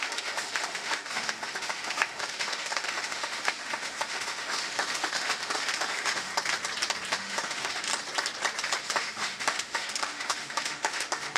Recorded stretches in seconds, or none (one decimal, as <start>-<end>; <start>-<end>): 6.3-7.1; 7.9-8.8